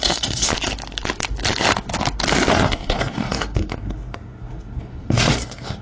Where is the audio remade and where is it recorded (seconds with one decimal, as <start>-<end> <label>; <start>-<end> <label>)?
0.0-0.5 remade; 0.5-2.5 recorded; 2.5-5.8 remade